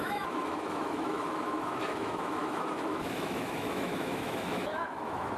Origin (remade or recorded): remade